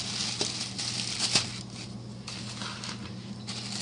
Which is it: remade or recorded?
recorded